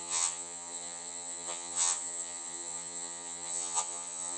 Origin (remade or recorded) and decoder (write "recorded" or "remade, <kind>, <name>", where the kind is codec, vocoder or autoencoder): remade, vocoder, HiFi-GAN